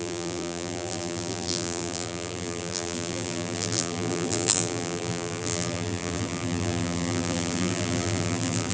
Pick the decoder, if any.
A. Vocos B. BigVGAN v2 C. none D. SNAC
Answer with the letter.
B